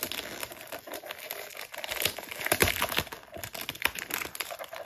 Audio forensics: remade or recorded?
recorded